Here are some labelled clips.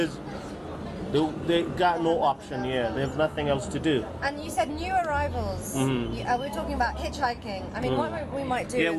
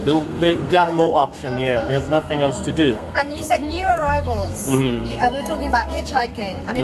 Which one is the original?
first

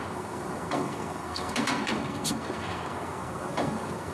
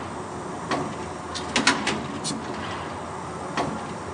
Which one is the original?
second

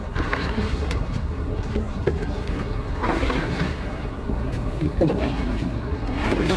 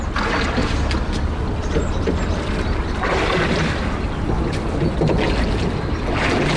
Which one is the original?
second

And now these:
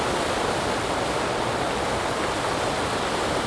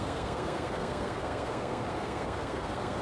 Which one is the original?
first